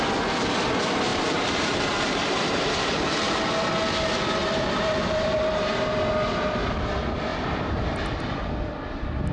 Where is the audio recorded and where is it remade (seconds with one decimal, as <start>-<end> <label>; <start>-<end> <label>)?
0.0-1.1 recorded; 1.1-3.5 remade; 3.5-4.4 recorded; 4.4-5.7 remade; 5.7-7.3 recorded; 7.3-8.0 remade; 8.0-9.3 recorded